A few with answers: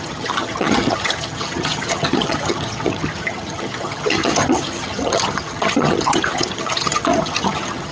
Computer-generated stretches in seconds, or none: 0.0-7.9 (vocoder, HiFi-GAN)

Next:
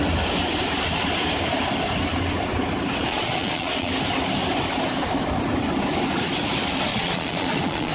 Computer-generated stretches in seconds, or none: 3.1-3.9 (vocoder, Vocos); 6.9-7.9

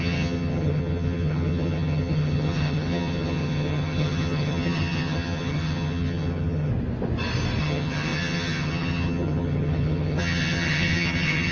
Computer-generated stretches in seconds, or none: 0.0-6.7 (vocoder, HiFi-GAN); 7.6-11.5

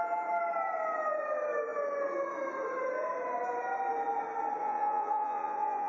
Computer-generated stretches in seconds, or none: 4.6-5.9 (vocoder, Vocos)